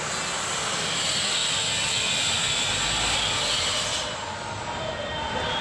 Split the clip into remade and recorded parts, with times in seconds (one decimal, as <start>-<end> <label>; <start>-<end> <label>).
0.0-5.6 recorded